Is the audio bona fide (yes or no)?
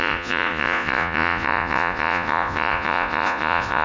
no